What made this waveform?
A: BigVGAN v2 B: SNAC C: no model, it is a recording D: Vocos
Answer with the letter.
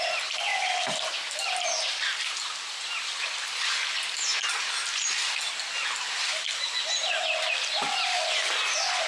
C